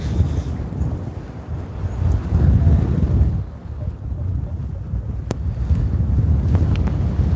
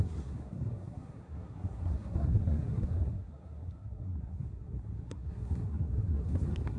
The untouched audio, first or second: first